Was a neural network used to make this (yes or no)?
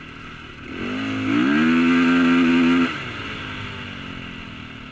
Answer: no